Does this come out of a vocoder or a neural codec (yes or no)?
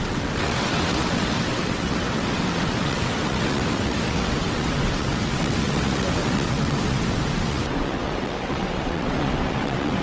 yes